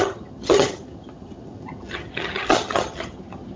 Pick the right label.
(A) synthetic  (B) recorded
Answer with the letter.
A